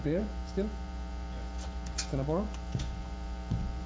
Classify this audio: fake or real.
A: fake